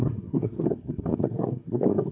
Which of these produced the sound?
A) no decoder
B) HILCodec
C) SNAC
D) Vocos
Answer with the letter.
C